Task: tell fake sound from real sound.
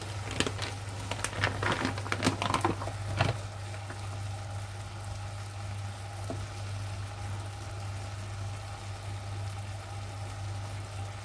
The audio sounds real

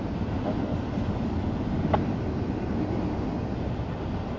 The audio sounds real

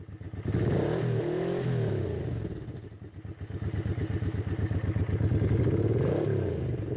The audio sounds real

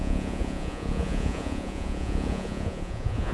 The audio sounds fake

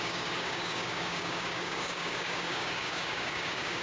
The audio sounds fake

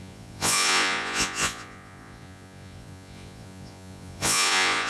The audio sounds fake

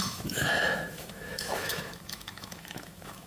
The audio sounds fake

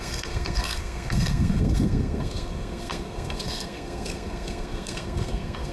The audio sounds fake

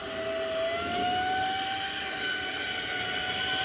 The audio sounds real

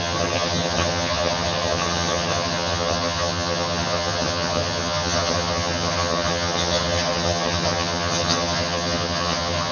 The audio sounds fake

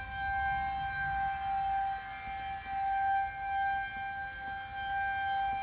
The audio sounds real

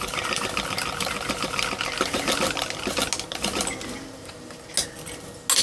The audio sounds real